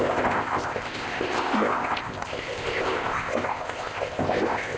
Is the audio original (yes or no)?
no